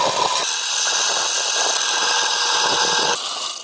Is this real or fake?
real